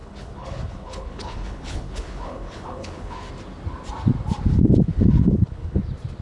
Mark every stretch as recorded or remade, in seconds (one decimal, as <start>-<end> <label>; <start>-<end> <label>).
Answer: 0.0-3.3 remade; 3.3-4.5 recorded; 4.5-5.8 remade; 5.8-6.2 recorded